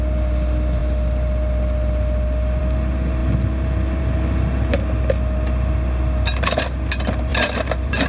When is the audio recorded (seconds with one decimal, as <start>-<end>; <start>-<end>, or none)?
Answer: 0.0-7.3